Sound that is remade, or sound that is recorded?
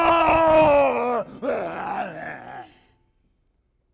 recorded